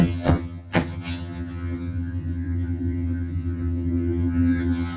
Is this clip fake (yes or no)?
yes